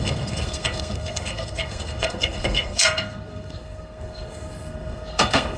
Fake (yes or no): yes